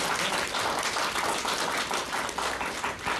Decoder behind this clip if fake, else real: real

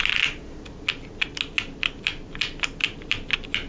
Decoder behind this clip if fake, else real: real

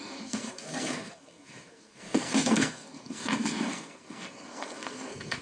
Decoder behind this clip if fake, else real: fake, codec, SNAC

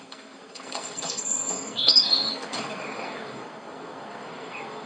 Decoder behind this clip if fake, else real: fake, codec, SNAC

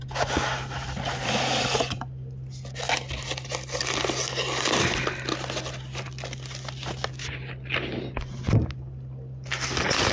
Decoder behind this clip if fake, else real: real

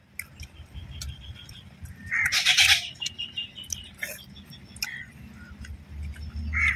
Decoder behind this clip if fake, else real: real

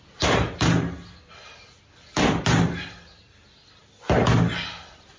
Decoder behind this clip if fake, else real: real